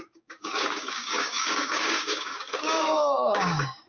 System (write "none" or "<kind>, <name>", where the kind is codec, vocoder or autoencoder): codec, DAC